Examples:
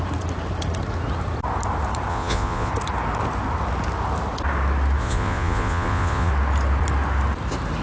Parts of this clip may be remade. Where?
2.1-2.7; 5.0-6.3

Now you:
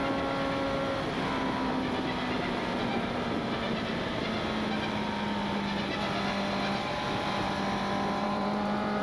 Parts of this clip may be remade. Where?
2.9-4.2; 8.2-9.0

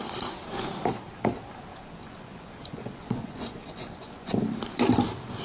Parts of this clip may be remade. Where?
1.7-4.4

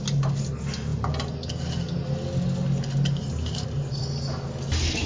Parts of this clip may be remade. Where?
none